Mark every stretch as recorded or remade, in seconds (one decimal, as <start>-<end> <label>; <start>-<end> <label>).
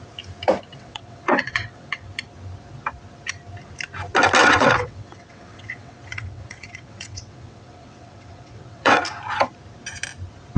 0.0-0.7 recorded; 0.7-2.1 remade; 2.1-4.4 recorded; 4.4-9.0 remade; 9.0-10.6 recorded